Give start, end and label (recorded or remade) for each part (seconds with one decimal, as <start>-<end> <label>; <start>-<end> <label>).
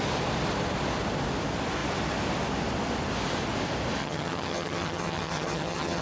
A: 0.0-4.0 recorded; 4.0-6.0 remade